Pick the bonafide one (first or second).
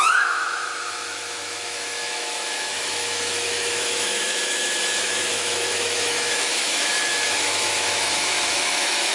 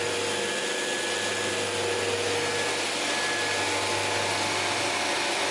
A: second